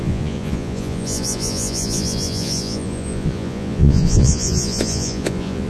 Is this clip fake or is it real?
fake